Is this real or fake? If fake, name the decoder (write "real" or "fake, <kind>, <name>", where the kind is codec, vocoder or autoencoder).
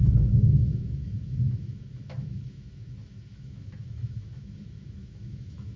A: fake, autoencoder, DAC-VAE